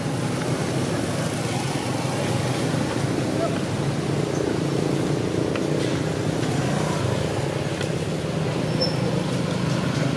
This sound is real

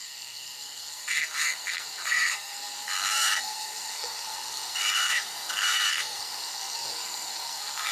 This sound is fake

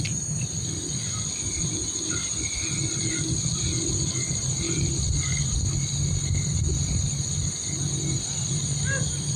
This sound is real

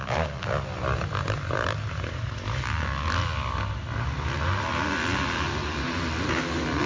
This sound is real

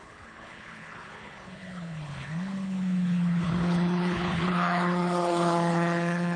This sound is fake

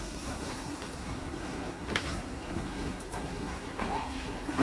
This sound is fake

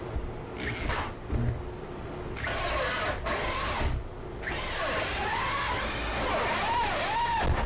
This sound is real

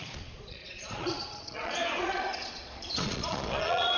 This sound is fake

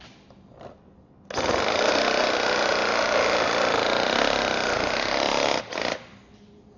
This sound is real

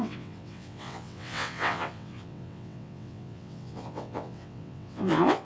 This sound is fake